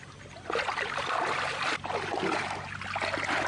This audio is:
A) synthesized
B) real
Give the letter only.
B